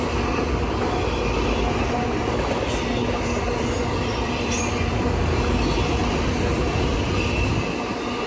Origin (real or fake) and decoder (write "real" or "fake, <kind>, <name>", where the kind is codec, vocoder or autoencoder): real